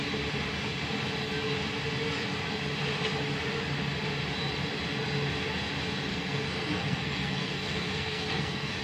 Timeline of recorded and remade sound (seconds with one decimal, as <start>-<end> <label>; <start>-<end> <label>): 0.0-6.1 recorded; 6.1-8.8 remade